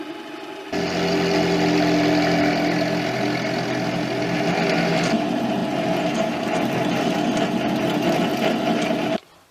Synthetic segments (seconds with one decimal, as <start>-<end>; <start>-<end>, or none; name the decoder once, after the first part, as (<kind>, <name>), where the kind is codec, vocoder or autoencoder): none